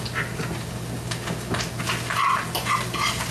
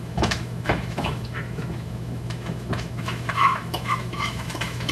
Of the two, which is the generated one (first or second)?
second